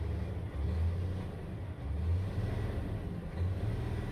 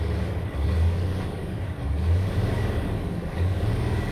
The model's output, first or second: second